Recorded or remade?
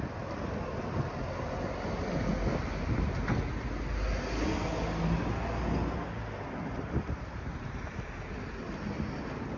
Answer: recorded